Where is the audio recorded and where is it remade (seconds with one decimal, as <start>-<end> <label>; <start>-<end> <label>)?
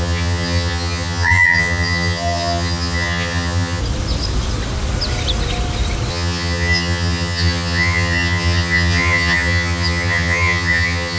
0.0-3.8 remade; 3.8-6.1 recorded; 6.1-11.2 remade